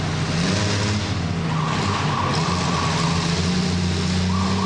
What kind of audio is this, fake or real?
real